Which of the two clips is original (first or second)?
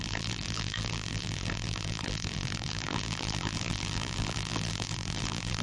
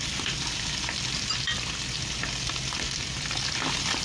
second